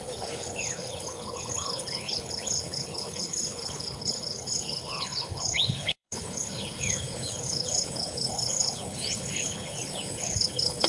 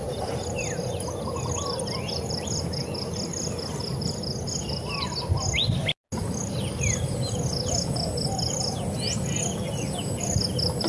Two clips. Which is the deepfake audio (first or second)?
first